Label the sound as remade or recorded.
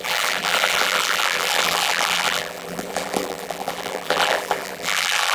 remade